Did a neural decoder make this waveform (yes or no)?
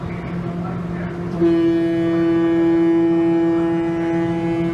no